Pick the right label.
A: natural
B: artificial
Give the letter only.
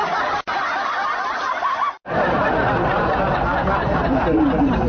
A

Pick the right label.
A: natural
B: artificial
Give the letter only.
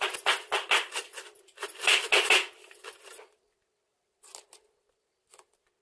A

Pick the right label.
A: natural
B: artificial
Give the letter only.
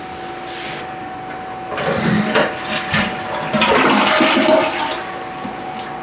A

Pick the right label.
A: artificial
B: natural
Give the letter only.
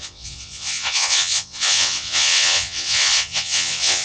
A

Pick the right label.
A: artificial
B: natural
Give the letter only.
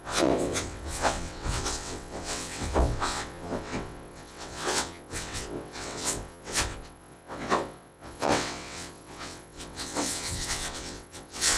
A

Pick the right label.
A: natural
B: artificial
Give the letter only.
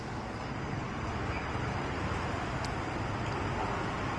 A